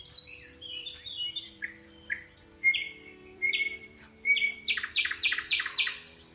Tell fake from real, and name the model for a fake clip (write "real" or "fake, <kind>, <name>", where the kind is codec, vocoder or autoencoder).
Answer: fake, vocoder, BigVGAN v2